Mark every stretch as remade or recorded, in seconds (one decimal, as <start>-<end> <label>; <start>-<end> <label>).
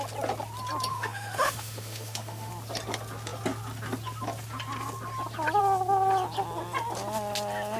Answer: 0.0-0.9 recorded; 0.9-2.5 remade; 2.5-7.8 recorded